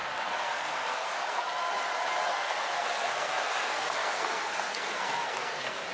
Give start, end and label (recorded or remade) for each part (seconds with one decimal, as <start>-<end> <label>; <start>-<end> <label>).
0.0-1.4 remade; 1.4-2.3 recorded; 2.3-5.9 remade